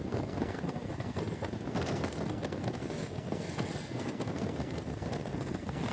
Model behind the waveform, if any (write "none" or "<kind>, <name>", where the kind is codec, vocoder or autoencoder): codec, SNAC